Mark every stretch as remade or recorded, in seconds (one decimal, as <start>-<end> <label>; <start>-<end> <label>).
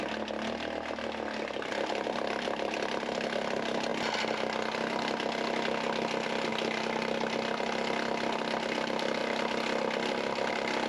0.0-10.9 recorded